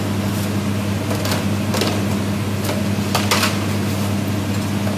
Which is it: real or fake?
real